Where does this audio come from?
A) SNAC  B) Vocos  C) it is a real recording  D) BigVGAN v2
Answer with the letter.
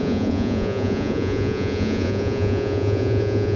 B